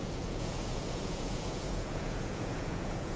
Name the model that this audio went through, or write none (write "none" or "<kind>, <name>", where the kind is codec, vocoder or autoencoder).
vocoder, Vocos